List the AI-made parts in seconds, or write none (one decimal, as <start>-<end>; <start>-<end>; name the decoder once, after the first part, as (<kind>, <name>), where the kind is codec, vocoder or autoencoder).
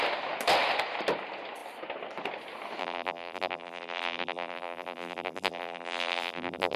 2.8-6.8 (vocoder, BigVGAN v2)